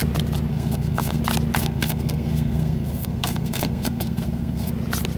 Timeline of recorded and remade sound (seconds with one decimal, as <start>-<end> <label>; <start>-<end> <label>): 0.0-0.5 recorded; 0.5-1.2 remade; 1.2-1.6 recorded; 1.6-4.7 remade; 4.7-5.2 recorded

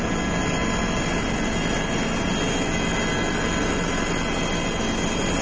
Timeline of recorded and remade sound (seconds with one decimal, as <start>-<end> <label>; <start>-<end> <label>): 0.0-5.4 recorded